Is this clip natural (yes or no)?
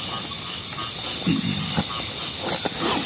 yes